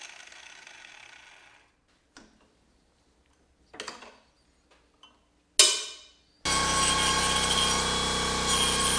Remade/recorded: recorded